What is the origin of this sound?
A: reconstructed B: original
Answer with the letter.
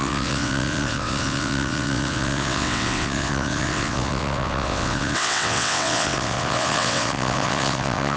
A